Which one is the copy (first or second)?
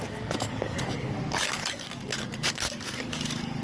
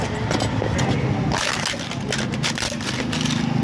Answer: first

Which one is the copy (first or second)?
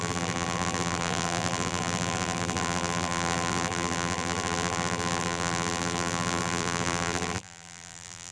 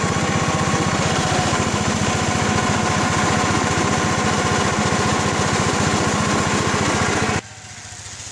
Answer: first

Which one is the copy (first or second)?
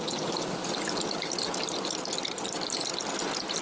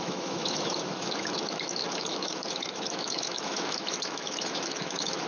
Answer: second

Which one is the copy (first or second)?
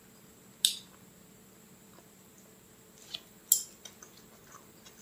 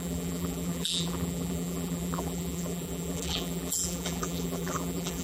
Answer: second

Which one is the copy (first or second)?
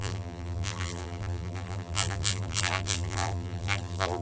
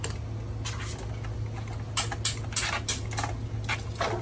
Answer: first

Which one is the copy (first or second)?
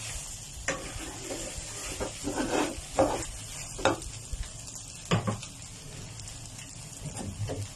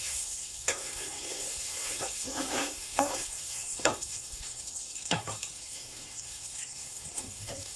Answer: second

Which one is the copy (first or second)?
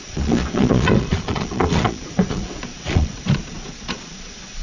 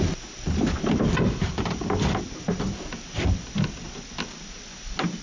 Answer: first